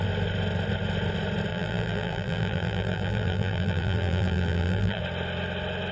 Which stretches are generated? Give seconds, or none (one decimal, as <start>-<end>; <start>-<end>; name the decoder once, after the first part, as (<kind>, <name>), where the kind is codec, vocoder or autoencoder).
1.5-5.0 (vocoder, BigVGAN v2)